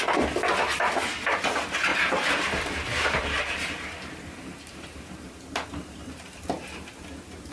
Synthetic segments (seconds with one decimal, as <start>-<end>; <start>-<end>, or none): 1.9-6.4